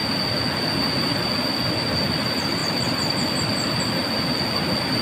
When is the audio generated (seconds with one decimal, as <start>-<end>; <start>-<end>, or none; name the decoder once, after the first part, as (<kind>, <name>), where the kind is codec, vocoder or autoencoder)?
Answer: 2.6-3.8 (vocoder, BigVGAN v2)